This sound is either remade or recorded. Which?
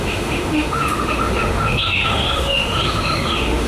remade